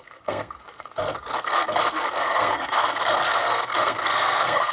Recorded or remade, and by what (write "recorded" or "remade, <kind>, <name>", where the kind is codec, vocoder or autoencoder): remade, codec, SNAC